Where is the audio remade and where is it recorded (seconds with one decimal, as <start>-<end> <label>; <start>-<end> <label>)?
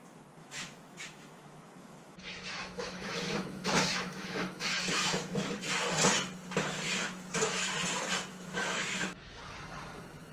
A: 0.0-0.4 recorded; 0.4-5.6 remade; 5.6-7.0 recorded; 7.0-7.7 remade; 7.7-8.3 recorded; 8.3-9.4 remade; 9.4-10.3 recorded